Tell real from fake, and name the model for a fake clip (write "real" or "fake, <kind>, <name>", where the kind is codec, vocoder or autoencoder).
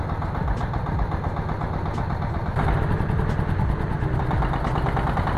real